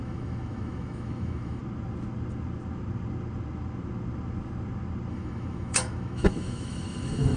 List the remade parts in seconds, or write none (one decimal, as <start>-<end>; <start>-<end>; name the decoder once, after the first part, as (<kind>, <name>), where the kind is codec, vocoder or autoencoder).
0.0-1.6 (autoencoder, DAC-VAE); 5.1-7.4